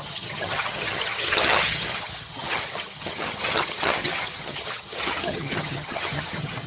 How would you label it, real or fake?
fake